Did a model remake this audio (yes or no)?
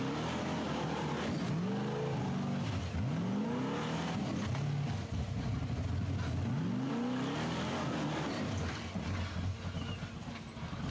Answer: no